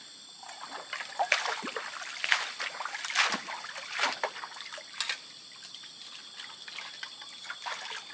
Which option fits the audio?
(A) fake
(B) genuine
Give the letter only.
B